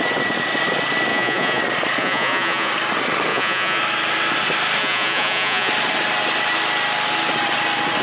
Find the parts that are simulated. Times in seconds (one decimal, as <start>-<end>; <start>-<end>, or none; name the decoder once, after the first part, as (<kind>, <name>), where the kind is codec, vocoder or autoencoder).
1.1-1.6 (vocoder, Vocos); 2.0-2.7; 3.3-3.8; 4.8-5.7